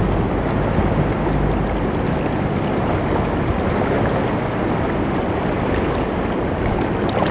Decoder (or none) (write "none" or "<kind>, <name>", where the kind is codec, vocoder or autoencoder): none